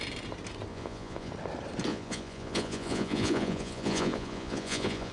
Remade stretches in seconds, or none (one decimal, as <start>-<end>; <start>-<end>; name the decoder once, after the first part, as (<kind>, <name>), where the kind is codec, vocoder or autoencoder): 0.7-1.3 (vocoder, Vocos); 1.9-5.1